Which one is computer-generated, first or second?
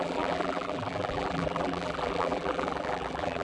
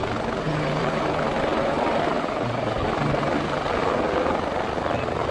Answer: first